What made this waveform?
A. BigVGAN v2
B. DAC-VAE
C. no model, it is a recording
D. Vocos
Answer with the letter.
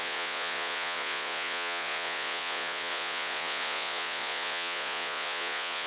D